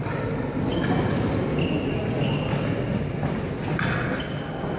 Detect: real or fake real